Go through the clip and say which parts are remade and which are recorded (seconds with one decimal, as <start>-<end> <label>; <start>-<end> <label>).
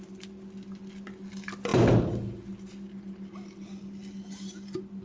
0.0-5.0 recorded